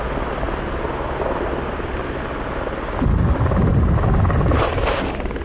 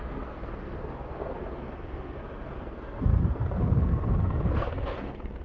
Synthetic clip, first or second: second